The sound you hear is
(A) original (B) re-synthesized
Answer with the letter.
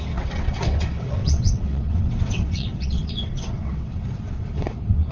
B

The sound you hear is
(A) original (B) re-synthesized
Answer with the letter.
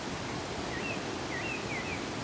A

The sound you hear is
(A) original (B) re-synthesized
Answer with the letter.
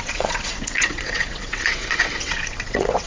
B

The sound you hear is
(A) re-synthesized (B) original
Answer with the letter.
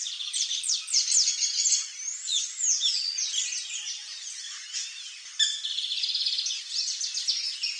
B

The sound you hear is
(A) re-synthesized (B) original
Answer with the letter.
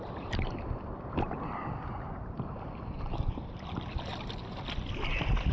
B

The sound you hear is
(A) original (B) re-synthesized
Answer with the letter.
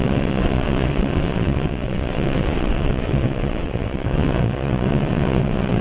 B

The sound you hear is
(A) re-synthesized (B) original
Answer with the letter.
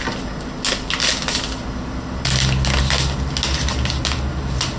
B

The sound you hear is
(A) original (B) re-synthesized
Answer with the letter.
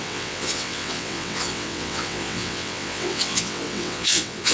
B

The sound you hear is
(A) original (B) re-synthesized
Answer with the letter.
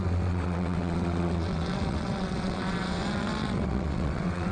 B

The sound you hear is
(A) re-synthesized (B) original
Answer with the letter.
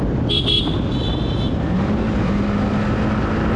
B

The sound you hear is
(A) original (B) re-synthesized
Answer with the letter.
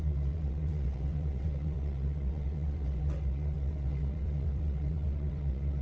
B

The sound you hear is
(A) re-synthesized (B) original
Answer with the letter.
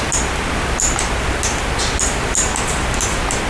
B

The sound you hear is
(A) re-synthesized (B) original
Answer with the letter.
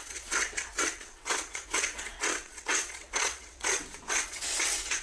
A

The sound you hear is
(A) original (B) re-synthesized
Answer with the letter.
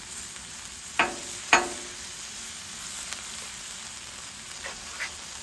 A